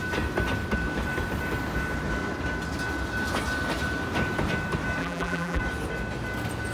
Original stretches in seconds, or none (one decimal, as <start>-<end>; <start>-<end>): 0.0-5.0; 5.6-6.7